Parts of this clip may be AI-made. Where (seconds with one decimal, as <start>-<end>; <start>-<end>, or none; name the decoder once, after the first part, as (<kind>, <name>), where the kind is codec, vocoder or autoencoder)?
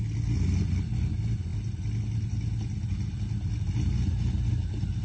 none